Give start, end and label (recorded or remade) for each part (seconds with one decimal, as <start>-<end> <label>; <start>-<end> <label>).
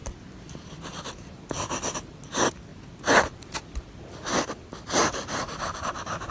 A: 0.0-5.0 recorded; 5.0-6.3 remade